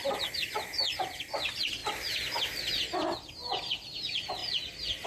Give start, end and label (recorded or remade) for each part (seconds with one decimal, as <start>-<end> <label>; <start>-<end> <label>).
0.0-5.1 recorded